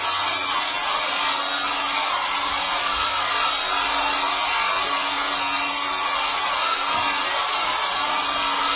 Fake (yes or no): no